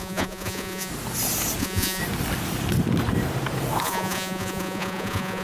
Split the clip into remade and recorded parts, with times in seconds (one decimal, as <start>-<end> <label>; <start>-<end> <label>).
0.0-0.9 remade; 0.9-1.6 recorded; 1.6-2.0 remade; 2.0-3.8 recorded; 3.8-5.4 remade